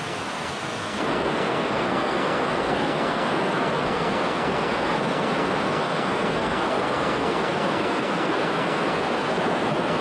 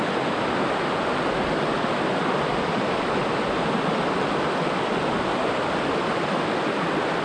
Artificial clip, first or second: first